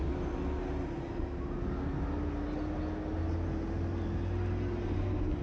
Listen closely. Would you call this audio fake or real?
real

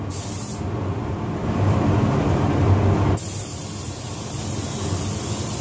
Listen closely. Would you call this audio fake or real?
real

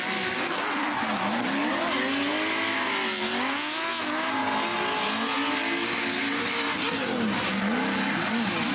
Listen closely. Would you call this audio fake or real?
real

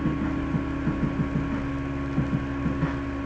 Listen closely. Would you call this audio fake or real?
real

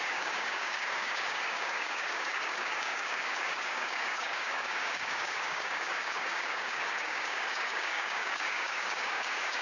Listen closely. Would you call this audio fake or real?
fake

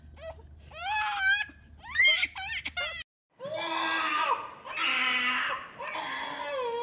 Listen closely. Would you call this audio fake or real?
real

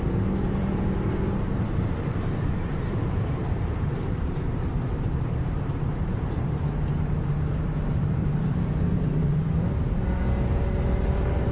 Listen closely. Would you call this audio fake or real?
fake